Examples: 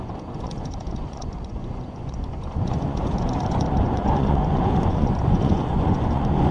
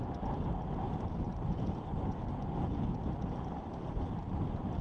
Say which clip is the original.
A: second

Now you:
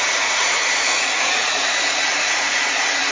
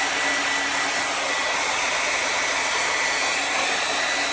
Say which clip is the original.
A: second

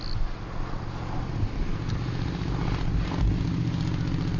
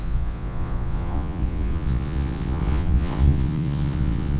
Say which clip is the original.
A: first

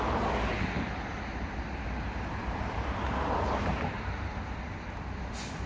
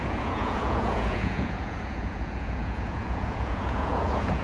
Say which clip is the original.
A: first